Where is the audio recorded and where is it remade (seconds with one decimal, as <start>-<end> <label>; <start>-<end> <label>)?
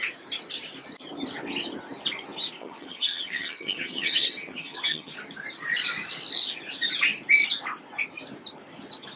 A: 0.0-2.6 recorded; 2.6-5.1 remade; 5.1-9.2 recorded